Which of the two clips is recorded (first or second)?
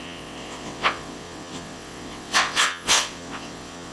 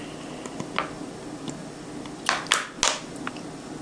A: second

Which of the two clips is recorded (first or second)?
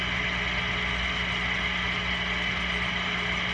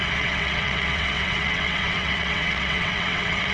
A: first